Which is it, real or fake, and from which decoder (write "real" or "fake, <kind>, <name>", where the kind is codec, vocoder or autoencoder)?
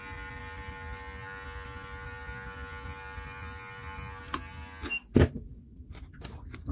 real